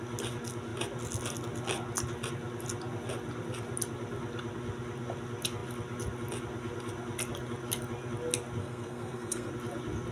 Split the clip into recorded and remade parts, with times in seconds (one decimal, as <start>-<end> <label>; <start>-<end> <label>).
0.0-8.6 recorded; 8.6-9.5 remade; 9.5-10.1 recorded